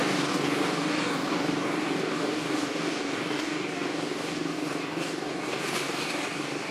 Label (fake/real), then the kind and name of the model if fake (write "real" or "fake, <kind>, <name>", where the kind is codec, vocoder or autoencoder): fake, codec, DAC